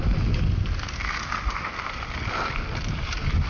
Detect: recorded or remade recorded